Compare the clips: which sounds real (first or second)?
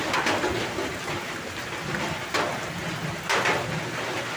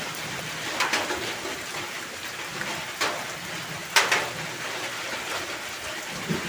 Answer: first